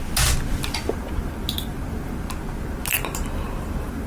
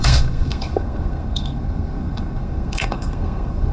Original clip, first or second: first